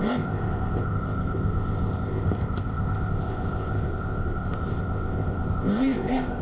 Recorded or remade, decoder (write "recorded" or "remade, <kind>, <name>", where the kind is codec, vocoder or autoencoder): remade, codec, ZipCodec